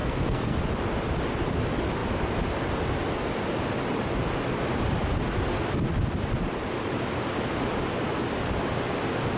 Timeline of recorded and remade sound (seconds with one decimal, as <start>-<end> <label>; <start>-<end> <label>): 0.0-0.6 remade; 0.6-9.4 recorded

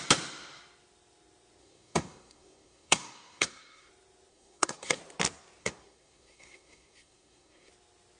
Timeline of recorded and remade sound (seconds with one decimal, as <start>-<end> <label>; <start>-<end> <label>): 0.0-1.6 recorded; 1.6-3.9 remade; 3.9-4.3 recorded; 4.3-5.0 remade; 5.0-5.6 recorded; 5.6-7.7 remade; 7.7-8.2 recorded

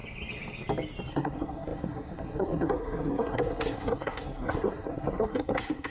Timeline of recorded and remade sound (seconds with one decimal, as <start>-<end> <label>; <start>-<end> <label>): 0.0-1.1 recorded; 1.1-5.9 remade

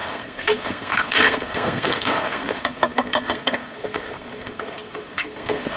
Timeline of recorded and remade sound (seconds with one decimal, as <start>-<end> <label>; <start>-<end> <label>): 0.0-5.8 remade

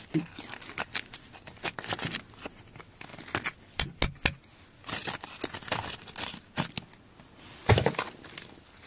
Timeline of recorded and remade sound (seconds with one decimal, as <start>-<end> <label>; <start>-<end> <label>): 0.0-8.9 recorded